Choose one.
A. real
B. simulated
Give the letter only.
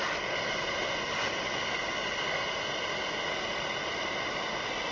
A